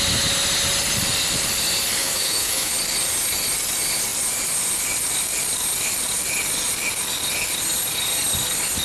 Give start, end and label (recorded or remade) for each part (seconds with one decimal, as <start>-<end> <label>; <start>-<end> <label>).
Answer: 0.0-2.0 recorded; 2.0-2.7 remade; 2.7-8.8 recorded